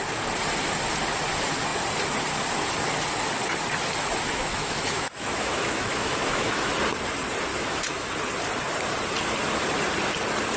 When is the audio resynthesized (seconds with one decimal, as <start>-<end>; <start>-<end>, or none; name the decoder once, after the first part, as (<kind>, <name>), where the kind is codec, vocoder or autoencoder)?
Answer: 4.4-6.7 (autoencoder, DAC-VAE); 7.5-8.1